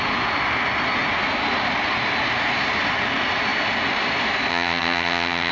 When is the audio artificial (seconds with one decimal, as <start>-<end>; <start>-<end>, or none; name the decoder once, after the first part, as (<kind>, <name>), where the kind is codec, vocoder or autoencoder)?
4.5-5.5 (vocoder, HiFi-GAN)